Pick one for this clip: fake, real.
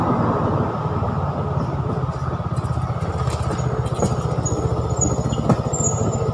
real